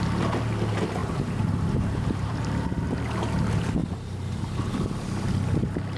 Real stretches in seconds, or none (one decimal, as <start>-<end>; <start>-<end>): 0.0-1.0; 2.7-3.8; 4.7-6.0